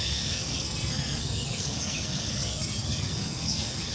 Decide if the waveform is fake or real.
fake